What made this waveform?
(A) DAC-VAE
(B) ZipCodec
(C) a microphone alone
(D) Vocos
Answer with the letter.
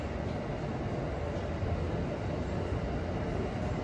C